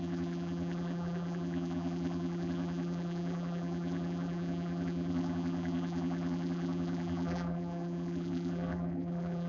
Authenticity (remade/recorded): remade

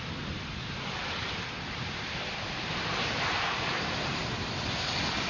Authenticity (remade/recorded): remade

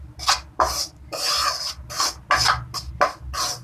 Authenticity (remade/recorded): recorded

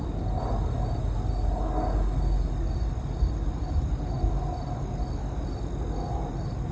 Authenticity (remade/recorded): recorded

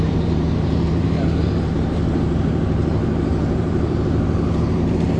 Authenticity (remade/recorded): remade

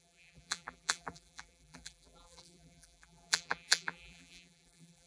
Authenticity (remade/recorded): remade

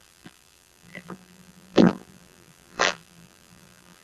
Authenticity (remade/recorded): remade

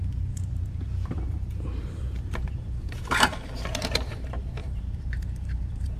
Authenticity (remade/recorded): remade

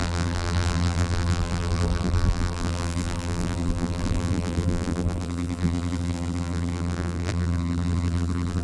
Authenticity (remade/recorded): remade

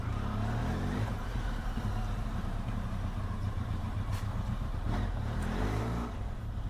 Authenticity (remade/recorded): remade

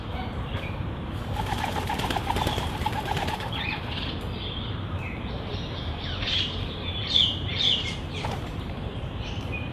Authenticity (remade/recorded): remade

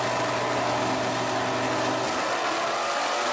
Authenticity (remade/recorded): recorded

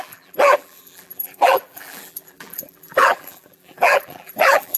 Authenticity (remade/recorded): remade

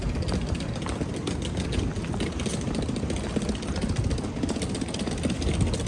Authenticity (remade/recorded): recorded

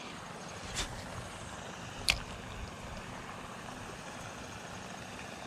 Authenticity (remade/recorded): recorded